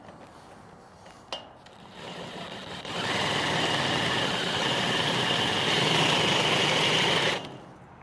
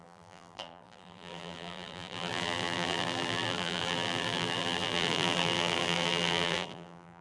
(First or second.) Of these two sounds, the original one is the first